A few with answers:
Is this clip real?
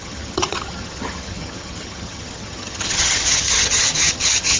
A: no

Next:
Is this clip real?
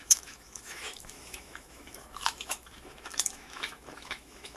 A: no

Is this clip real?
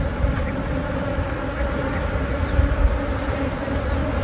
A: yes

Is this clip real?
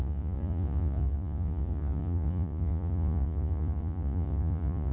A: no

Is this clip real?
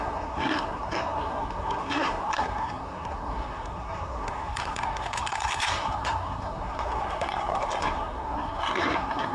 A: no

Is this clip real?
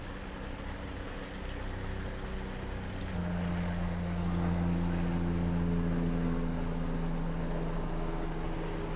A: yes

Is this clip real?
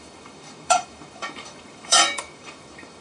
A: no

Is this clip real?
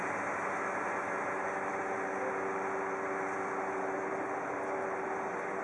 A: yes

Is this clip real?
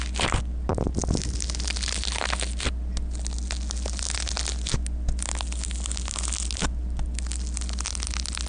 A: yes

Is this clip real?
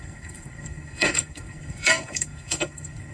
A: no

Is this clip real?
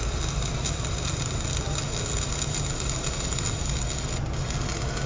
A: yes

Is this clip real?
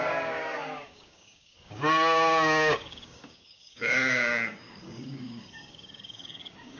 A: no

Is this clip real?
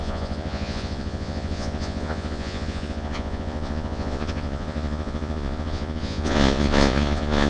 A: no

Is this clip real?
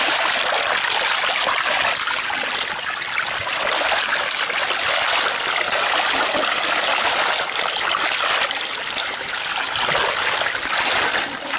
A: yes